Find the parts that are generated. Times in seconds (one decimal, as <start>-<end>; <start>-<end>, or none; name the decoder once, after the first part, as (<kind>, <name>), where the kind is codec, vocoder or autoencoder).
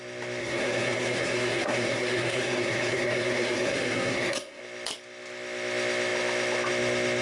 0.4-4.6 (codec, SNAC)